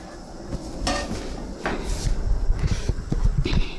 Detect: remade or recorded recorded